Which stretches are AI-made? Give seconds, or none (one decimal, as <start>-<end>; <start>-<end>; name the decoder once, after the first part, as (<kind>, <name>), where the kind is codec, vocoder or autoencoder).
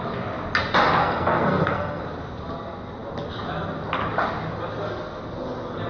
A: 1.0-2.0 (codec, SNAC)